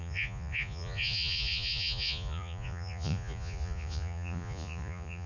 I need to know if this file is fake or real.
fake